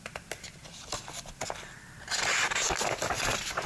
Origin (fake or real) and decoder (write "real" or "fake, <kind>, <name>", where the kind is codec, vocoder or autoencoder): real